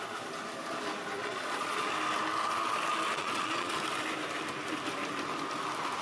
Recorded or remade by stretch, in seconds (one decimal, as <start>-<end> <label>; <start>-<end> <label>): 0.0-1.2 recorded; 1.2-1.9 remade; 1.9-3.1 recorded; 3.1-3.7 remade; 3.7-6.0 recorded